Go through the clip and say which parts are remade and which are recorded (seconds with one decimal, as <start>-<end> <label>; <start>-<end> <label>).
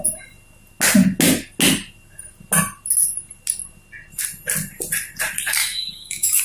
0.0-5.6 recorded; 5.6-6.4 remade